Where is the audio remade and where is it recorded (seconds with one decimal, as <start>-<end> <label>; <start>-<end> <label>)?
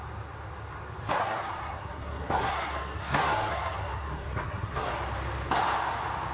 0.0-1.2 recorded; 1.2-4.9 remade; 4.9-6.3 recorded